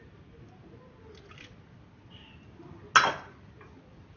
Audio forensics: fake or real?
real